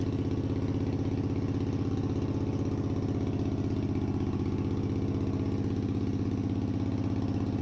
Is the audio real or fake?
real